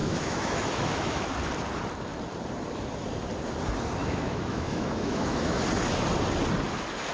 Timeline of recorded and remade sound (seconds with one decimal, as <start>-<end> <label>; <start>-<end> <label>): 0.0-1.3 remade; 1.3-4.0 recorded; 4.0-5.6 remade; 5.6-7.1 recorded